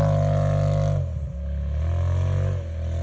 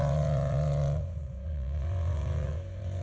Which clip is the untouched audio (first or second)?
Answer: first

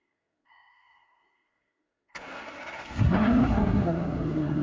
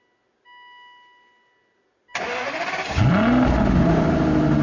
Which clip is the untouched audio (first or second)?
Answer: second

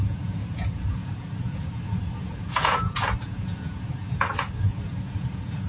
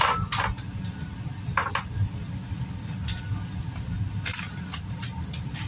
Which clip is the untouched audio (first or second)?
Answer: second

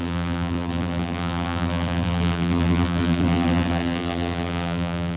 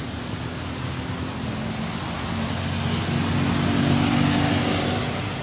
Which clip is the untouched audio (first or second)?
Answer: second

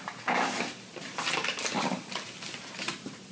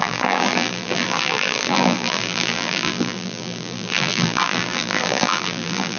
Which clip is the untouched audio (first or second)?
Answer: first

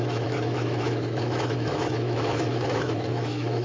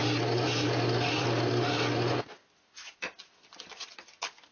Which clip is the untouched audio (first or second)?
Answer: second